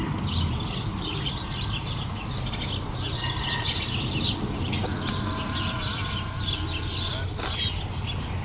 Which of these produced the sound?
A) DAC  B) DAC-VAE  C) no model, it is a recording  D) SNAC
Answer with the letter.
C